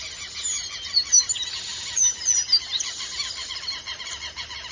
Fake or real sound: real